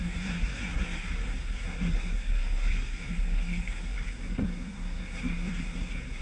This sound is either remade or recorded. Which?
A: remade